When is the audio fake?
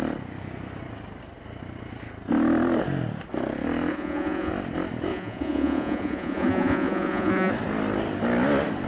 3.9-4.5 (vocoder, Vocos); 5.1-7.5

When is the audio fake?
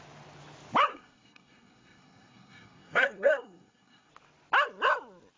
0.9-4.1 (codec, SNAC)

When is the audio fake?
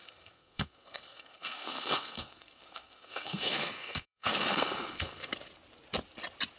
0.0-5.3 (codec, SNAC)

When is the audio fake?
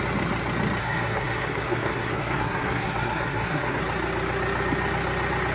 0.8-3.8 (codec, SNAC)